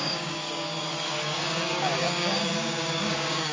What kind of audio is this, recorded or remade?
remade